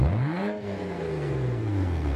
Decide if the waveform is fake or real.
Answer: fake